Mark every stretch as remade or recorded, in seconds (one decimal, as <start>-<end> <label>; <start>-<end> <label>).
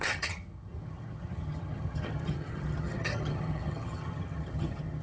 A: 0.0-5.0 remade